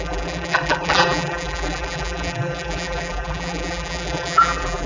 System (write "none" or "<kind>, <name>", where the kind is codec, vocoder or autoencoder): vocoder, BigVGAN v2